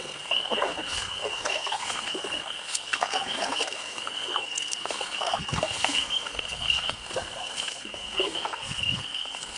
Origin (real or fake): fake